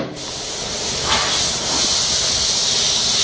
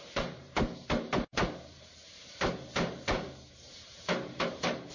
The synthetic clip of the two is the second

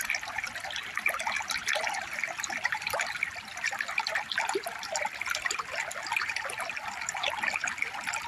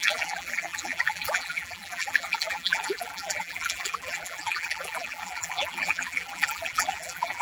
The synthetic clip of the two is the second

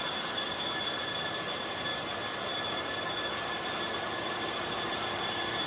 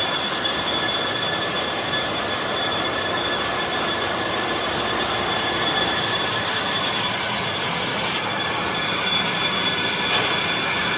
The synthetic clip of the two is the second